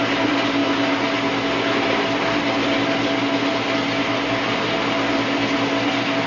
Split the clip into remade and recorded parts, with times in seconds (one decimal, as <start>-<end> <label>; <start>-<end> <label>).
0.0-6.3 recorded